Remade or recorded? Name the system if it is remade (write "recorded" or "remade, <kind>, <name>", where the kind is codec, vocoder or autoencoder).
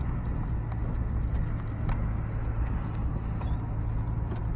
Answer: recorded